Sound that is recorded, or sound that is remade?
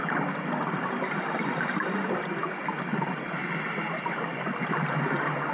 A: recorded